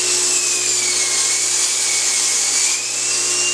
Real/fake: real